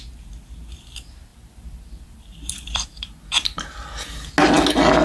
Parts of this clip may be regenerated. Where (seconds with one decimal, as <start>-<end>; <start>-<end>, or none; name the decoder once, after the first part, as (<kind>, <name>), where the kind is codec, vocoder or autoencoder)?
1.3-4.3 (vocoder, BigVGAN v2)